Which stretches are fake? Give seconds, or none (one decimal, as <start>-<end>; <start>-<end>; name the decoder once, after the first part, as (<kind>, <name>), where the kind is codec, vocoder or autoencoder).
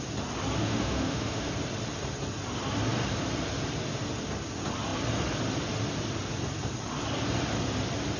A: 0.6-1.5 (autoencoder, DAC-VAE)